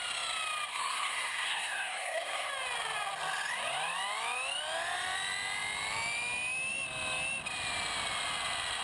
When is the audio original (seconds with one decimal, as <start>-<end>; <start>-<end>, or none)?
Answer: 0.0-0.7; 2.5-8.8

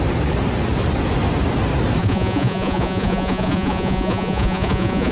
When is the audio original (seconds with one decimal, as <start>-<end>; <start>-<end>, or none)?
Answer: 0.0-2.0